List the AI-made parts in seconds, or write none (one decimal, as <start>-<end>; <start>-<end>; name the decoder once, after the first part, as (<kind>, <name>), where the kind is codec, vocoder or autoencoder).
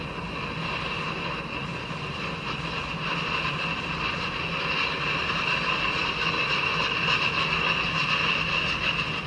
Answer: none